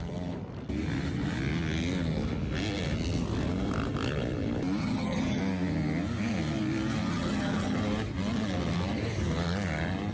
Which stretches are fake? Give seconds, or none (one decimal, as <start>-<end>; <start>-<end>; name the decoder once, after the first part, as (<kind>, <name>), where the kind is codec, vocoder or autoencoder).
4.8-5.4 (vocoder, HiFi-GAN); 7.1-7.8